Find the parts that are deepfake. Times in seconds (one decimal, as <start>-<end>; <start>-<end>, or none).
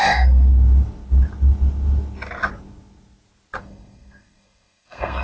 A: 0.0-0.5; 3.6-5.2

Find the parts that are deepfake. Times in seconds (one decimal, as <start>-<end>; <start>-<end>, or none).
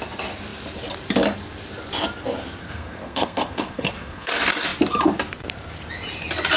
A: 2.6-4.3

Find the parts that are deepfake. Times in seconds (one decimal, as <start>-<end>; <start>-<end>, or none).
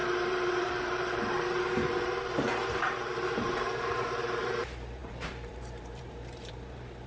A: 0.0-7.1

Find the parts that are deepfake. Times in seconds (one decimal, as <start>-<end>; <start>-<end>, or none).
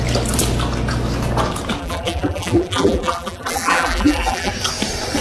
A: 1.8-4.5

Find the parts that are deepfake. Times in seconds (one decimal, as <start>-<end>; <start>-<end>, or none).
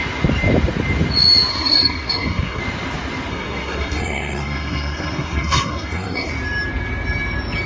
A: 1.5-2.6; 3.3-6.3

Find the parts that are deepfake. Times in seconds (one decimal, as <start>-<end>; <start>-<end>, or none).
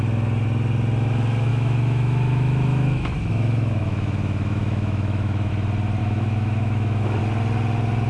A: 1.5-5.5; 6.0-7.2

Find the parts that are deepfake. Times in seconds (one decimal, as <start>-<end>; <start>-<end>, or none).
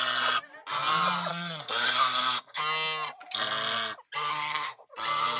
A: 1.3-2.6; 4.3-4.9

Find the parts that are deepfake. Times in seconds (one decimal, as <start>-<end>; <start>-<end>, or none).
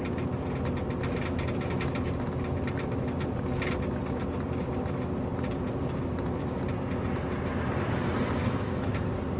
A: 8.4-9.0